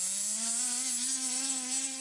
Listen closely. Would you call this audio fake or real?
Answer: real